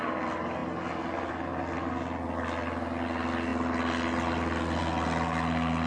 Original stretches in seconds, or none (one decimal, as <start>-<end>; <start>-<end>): 0.0-5.9